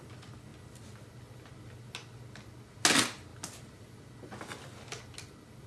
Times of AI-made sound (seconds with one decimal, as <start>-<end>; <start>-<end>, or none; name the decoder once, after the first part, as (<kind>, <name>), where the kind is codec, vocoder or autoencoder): none